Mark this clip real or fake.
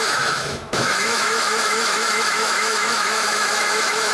fake